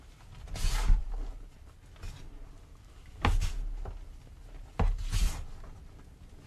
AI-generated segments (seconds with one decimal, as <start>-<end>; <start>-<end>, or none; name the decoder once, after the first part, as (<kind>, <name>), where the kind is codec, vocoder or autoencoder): none